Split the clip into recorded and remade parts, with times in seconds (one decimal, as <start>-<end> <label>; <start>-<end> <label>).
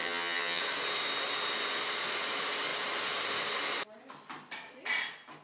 0.0-0.6 remade; 0.6-5.4 recorded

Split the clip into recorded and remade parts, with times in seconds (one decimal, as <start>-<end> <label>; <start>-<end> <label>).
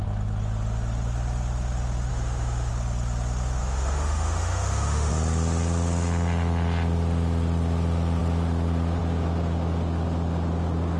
0.0-2.1 recorded; 2.1-2.7 remade; 2.7-3.6 recorded; 3.6-5.1 remade; 5.1-11.0 recorded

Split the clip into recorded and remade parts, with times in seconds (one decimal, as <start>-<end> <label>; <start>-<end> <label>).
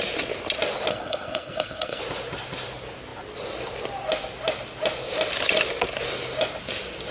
0.0-0.9 recorded; 0.9-2.0 remade; 2.0-7.1 recorded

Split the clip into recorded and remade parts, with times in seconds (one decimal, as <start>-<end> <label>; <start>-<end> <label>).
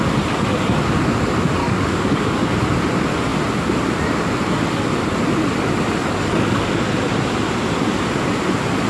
0.0-1.6 recorded; 1.6-2.5 remade; 2.5-6.0 recorded; 6.0-6.8 remade; 6.8-8.9 recorded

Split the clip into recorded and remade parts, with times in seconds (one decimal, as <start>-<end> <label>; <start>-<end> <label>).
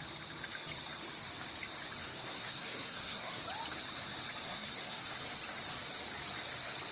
0.0-2.0 recorded; 2.0-3.4 remade; 3.4-4.5 recorded; 4.5-5.1 remade; 5.1-6.9 recorded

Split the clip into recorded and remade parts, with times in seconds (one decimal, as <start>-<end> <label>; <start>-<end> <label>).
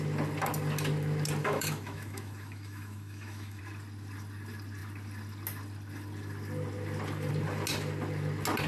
0.0-1.4 recorded; 1.4-3.6 remade; 3.6-8.7 recorded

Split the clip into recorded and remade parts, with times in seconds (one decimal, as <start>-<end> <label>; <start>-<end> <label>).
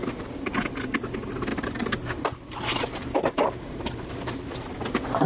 0.0-1.5 recorded; 1.5-4.7 remade; 4.7-5.3 recorded